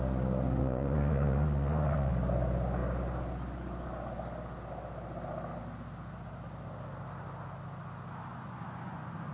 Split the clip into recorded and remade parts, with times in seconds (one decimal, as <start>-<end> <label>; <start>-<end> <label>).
0.0-0.6 recorded; 0.6-2.1 remade; 2.1-8.3 recorded; 8.3-9.3 remade

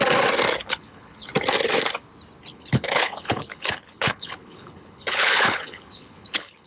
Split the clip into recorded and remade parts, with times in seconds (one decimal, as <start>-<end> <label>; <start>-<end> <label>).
0.0-0.6 recorded; 0.6-1.3 remade; 1.3-2.5 recorded; 2.5-6.7 remade

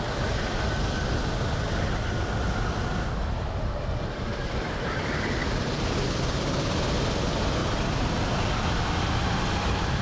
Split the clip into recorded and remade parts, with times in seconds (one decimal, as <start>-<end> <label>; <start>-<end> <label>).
0.0-10.0 recorded

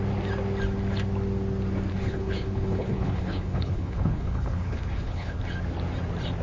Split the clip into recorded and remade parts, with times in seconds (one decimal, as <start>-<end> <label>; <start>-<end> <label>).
0.0-1.9 recorded; 1.9-5.4 remade; 5.4-6.4 recorded

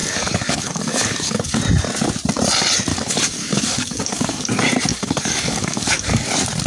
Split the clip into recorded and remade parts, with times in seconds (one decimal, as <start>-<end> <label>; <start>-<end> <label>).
0.0-1.6 remade; 1.6-2.9 recorded; 2.9-4.5 remade; 4.5-4.9 recorded; 4.9-6.3 remade; 6.3-6.7 recorded

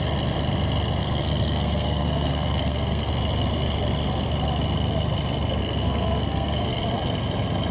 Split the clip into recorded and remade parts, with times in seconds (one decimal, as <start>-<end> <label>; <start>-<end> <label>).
0.0-1.0 recorded; 1.0-3.1 remade; 3.1-5.6 recorded; 5.6-6.8 remade; 6.8-7.7 recorded

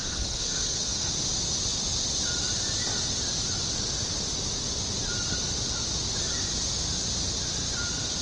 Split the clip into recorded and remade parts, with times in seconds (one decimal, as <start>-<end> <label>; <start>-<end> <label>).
0.0-1.1 remade; 1.1-8.2 recorded

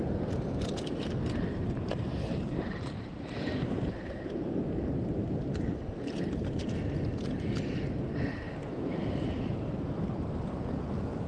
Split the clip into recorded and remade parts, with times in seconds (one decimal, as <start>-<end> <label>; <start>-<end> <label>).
0.0-1.5 recorded; 1.5-4.5 remade; 4.5-8.6 recorded; 8.6-9.5 remade; 9.5-11.3 recorded